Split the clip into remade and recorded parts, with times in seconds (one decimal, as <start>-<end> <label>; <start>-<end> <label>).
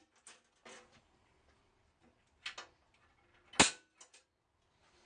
0.0-5.1 recorded